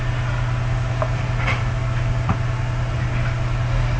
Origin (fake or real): real